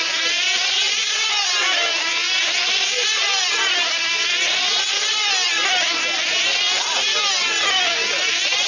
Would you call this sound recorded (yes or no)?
yes